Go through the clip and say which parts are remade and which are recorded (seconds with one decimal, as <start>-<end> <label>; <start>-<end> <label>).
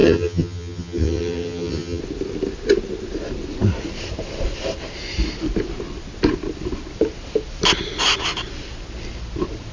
0.0-2.0 remade; 2.0-9.7 recorded